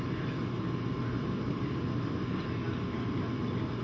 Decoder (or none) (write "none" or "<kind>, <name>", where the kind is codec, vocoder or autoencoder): none